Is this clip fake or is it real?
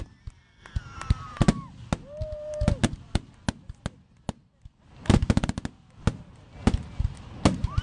real